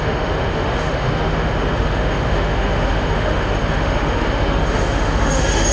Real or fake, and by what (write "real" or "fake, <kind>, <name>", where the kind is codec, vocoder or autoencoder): fake, autoencoder, DAC-VAE